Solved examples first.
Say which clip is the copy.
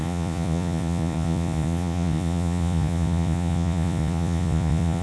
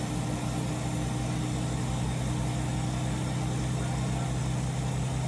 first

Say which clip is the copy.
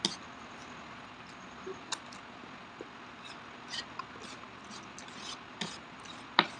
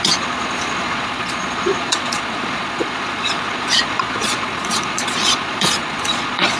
second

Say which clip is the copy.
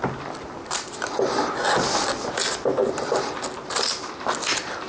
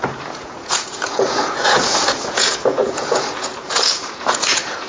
second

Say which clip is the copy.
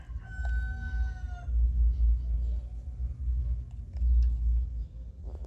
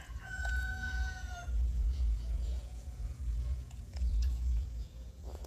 second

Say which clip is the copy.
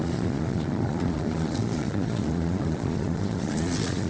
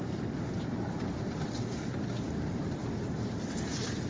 first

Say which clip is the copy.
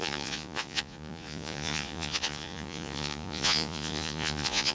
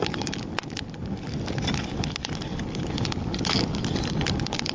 first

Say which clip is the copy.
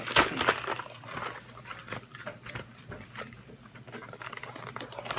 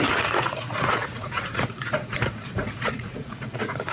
second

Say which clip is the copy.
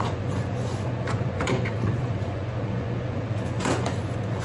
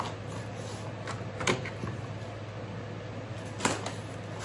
first